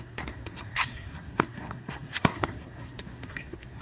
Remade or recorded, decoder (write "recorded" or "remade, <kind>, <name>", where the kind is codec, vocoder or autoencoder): remade, codec, SNAC